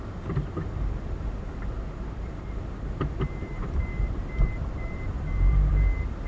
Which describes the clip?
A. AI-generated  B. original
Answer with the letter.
A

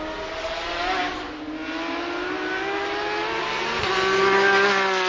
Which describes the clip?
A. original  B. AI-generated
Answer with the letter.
A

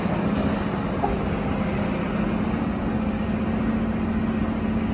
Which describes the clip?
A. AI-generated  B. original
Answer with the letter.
B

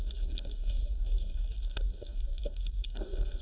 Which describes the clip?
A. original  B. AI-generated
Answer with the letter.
B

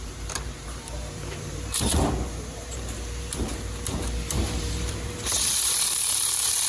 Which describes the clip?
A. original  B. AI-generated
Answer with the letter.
B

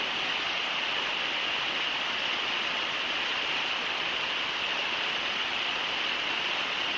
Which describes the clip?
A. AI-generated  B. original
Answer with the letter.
B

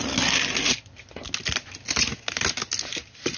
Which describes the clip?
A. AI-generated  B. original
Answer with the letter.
B